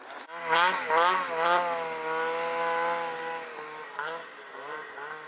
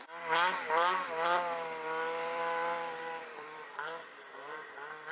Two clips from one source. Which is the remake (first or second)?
second